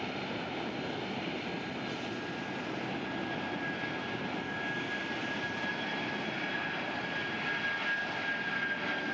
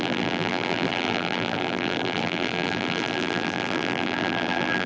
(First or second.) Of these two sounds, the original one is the first